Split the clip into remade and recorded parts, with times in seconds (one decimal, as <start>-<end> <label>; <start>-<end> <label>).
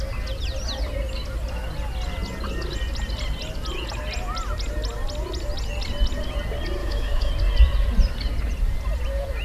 0.0-6.8 recorded; 6.8-7.3 remade; 7.3-9.4 recorded